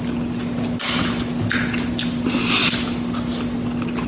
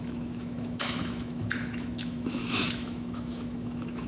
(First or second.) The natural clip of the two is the first